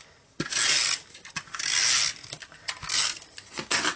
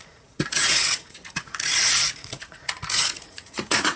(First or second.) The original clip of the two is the first